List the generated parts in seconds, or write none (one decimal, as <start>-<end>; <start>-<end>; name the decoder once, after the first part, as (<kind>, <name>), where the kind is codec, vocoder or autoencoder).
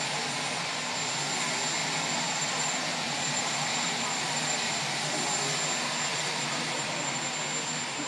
1.8-5.0 (vocoder, BigVGAN v2); 6.1-7.2